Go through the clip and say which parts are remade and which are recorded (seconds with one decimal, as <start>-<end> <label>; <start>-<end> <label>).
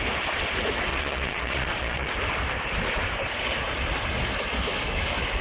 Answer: 0.0-0.9 recorded; 0.9-2.1 remade; 2.1-5.4 recorded